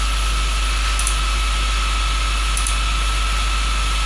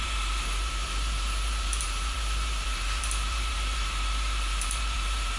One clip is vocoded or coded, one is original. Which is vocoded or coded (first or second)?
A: second